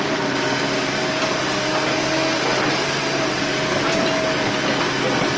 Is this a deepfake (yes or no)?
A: no